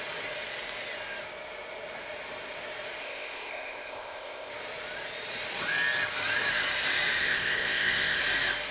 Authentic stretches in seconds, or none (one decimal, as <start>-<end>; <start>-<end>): 0.0-3.0; 4.5-7.2; 8.2-8.7